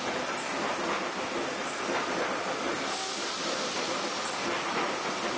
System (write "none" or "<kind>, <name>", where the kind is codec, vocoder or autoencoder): none